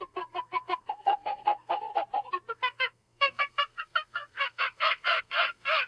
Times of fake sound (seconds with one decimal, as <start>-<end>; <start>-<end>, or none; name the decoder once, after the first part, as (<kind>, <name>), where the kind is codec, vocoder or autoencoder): 0.0-1.9 (codec, SNAC); 2.5-5.9